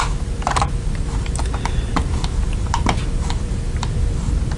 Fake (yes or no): yes